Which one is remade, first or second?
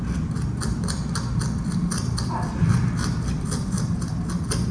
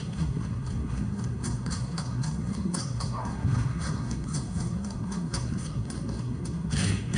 second